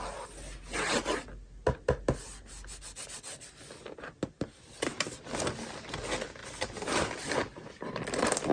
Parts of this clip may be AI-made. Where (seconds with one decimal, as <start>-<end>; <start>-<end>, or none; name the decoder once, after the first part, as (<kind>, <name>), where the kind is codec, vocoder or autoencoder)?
6.4-8.0 (vocoder, BigVGAN v2)